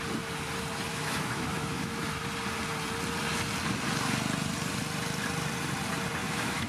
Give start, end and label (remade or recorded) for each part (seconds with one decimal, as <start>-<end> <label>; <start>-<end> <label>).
0.0-0.9 recorded; 0.9-2.0 remade; 2.0-6.2 recorded; 6.2-6.7 remade